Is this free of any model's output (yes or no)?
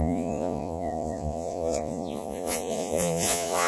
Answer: no